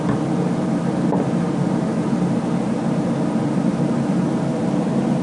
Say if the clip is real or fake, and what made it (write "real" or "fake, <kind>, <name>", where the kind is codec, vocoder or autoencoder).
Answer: real